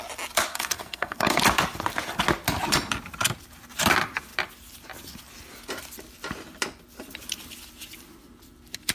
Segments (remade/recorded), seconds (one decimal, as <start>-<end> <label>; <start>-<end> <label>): 0.0-0.5 recorded; 0.5-1.4 remade; 1.4-8.9 recorded